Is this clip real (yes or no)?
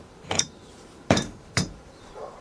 no